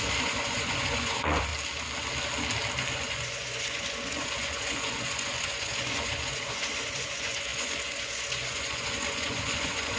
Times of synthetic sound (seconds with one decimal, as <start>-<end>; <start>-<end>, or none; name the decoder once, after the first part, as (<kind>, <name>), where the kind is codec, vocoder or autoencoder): 0.0-1.5 (vocoder, Vocos); 2.9-10.0